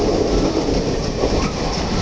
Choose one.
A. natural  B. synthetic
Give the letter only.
A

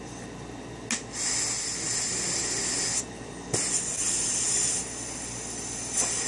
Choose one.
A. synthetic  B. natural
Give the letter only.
B